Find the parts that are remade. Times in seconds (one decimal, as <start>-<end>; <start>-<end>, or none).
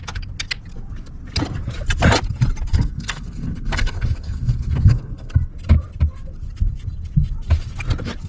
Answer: 2.7-5.4